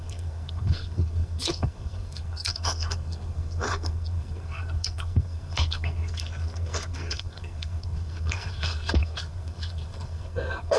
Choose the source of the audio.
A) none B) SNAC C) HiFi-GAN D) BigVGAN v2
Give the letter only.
B